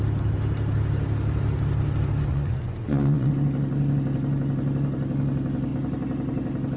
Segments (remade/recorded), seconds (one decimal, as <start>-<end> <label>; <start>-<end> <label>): 0.0-2.3 recorded; 2.3-3.3 remade; 3.3-6.8 recorded